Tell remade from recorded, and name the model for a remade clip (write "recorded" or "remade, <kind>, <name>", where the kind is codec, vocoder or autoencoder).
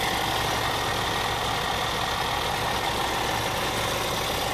recorded